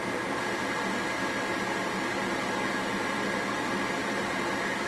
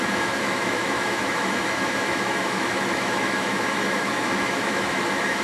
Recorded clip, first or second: first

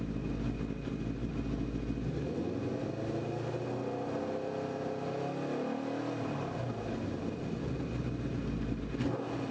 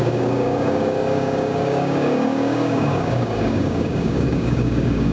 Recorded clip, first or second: first